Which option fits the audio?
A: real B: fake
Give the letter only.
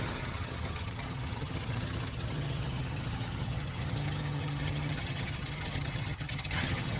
B